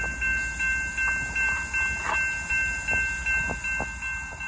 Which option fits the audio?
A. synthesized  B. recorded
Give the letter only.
B